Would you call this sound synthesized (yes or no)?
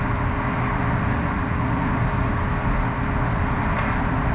no